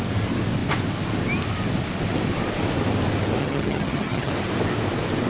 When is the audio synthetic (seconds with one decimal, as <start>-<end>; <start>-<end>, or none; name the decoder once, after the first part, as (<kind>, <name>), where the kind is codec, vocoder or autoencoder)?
3.4-4.3 (vocoder, HiFi-GAN)